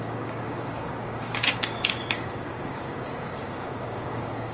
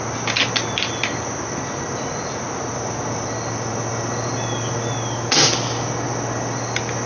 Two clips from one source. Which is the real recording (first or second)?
second